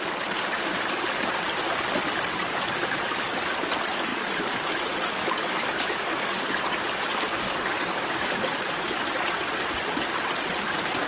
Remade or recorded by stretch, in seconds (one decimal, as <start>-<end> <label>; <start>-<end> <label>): 0.0-4.1 recorded; 4.1-4.7 remade; 4.7-5.2 recorded; 5.2-8.6 remade; 8.6-11.1 recorded